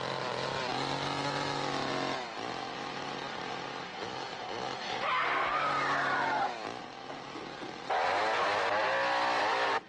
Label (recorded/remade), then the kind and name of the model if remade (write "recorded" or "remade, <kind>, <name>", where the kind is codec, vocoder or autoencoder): recorded